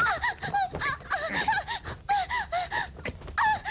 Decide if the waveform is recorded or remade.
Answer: recorded